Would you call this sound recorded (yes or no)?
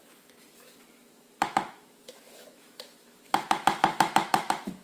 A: no